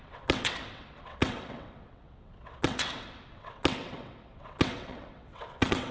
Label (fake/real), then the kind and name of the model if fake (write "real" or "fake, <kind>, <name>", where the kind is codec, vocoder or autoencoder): fake, vocoder, WaveNeXt